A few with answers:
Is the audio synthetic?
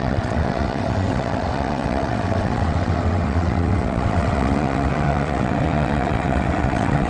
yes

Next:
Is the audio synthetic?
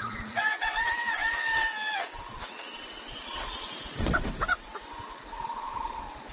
yes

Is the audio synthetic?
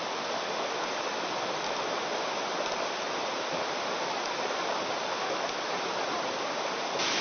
no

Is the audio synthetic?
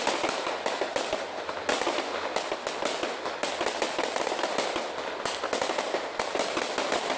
no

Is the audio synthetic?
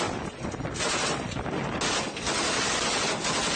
no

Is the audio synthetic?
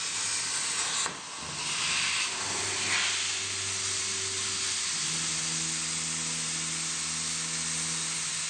no